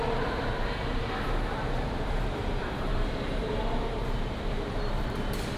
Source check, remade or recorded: remade